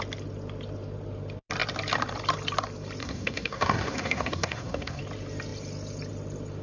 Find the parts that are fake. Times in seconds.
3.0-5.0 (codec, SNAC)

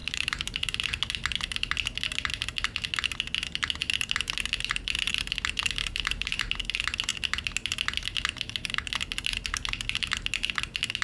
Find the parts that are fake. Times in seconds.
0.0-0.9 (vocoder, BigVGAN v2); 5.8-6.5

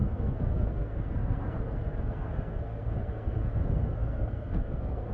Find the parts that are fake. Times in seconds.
0.0-5.1 (codec, SNAC)

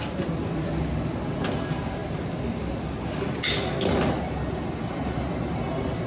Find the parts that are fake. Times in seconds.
none